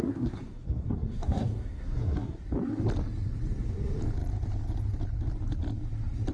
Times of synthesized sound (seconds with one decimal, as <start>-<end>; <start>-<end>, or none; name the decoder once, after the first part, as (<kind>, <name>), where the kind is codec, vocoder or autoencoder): 0.0-2.4 (codec, SNAC)